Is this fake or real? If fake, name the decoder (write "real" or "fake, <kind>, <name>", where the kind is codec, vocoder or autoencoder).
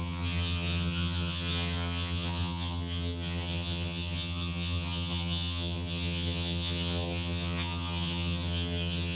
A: fake, vocoder, HiFi-GAN